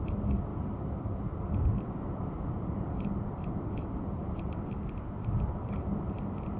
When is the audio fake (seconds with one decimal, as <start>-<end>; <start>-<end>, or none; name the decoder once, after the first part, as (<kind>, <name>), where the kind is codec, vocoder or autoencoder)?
none